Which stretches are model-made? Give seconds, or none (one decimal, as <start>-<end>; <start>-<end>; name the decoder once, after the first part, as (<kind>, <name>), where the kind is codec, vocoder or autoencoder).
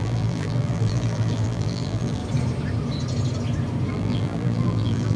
0.0-2.2 (vocoder, BigVGAN v2); 3.9-5.2